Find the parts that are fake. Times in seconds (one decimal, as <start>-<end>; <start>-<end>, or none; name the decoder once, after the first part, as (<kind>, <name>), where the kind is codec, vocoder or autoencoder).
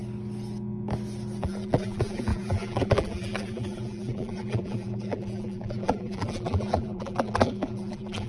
1.4-8.3 (vocoder, BigVGAN v2)